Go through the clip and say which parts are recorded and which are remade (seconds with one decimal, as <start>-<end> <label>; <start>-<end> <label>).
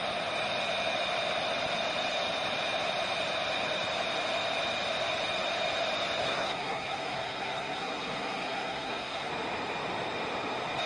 0.0-6.2 recorded; 6.2-9.3 remade; 9.3-10.9 recorded